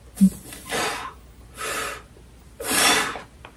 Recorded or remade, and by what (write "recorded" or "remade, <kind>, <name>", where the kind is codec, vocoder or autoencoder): recorded